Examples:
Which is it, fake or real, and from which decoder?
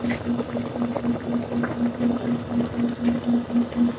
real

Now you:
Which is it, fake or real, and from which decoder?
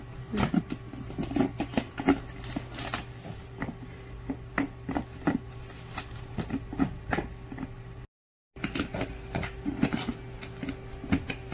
real